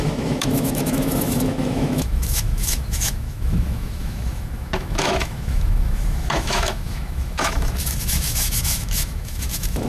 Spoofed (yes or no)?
yes